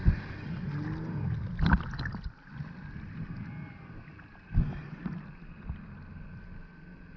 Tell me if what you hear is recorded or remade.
recorded